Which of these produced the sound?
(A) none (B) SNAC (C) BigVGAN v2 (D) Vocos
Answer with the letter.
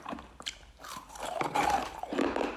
C